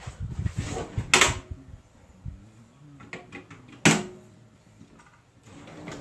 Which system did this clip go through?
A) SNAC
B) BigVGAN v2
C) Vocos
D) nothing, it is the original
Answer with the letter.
D